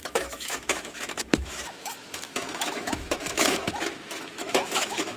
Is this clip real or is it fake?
fake